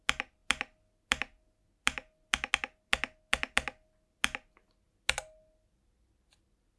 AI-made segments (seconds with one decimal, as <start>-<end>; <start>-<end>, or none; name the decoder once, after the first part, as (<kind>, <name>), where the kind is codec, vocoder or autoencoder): none